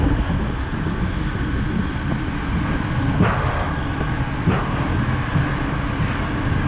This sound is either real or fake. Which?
real